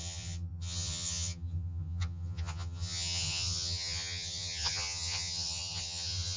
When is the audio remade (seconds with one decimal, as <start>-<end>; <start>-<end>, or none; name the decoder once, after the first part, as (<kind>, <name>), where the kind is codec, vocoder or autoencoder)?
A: 0.0-6.4 (vocoder, HiFi-GAN)